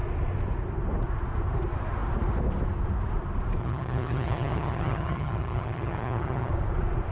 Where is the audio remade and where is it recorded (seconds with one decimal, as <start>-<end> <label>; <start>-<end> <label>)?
0.0-3.6 recorded; 3.6-6.5 remade; 6.5-7.1 recorded